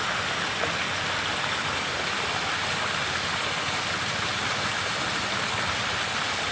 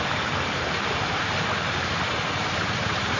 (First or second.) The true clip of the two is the first